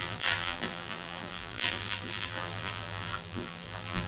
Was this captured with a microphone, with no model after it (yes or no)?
no